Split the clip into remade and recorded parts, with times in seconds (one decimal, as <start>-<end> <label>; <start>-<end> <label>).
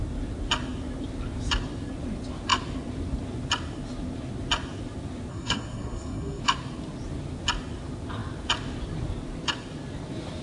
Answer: 0.0-5.3 recorded; 5.3-6.4 remade; 6.4-10.4 recorded